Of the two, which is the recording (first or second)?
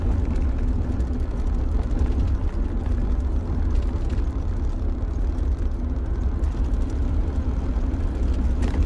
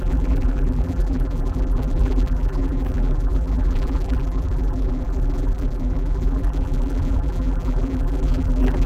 first